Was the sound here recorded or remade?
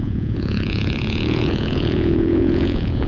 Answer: remade